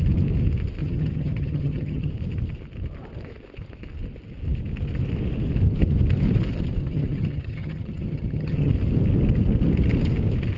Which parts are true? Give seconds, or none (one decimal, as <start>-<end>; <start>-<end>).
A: 0.0-0.8; 2.1-6.8; 8.7-10.6